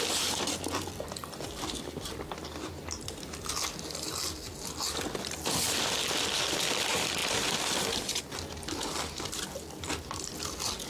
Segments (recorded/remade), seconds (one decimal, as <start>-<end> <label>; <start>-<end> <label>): 0.0-10.9 recorded